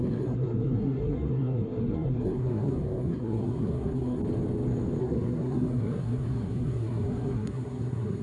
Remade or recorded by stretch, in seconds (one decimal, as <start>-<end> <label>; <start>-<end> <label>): 0.0-4.2 remade; 4.2-5.0 recorded; 5.0-8.2 remade